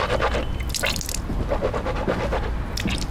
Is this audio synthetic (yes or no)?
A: no